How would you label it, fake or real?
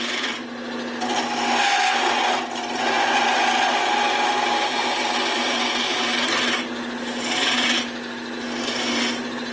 real